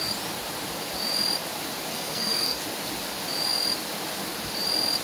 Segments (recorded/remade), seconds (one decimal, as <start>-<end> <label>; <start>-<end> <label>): 0.0-1.9 recorded; 1.9-2.6 remade; 2.6-5.0 recorded